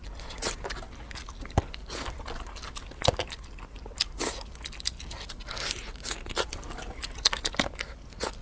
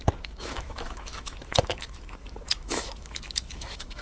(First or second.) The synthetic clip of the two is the second